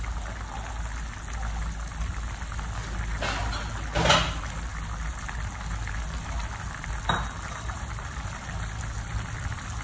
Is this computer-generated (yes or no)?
no